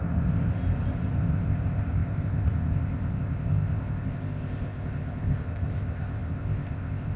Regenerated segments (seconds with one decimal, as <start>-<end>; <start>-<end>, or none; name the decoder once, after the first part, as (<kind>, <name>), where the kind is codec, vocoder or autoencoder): 0.0-0.5 (codec, ZipCodec); 1.2-7.2